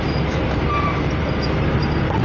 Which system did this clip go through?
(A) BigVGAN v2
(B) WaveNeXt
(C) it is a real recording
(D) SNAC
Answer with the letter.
A